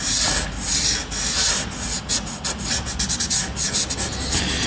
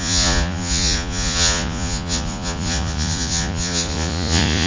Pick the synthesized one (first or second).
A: second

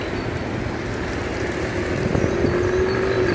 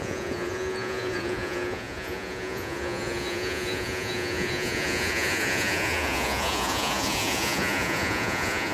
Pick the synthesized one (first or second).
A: second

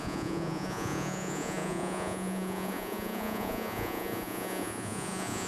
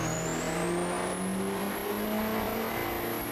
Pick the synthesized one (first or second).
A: first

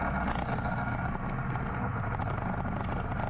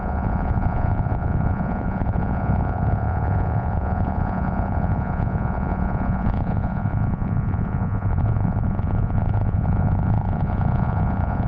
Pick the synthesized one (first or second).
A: second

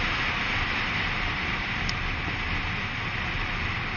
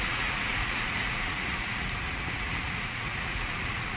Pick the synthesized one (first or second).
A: second